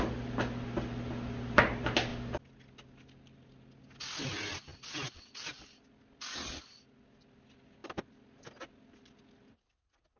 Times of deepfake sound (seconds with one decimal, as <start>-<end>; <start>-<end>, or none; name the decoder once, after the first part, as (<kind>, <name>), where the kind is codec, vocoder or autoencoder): none